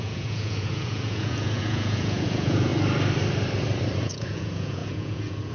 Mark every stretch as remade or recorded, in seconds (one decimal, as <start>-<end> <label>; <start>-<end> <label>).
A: 0.0-2.7 remade; 2.7-4.0 recorded; 4.0-5.5 remade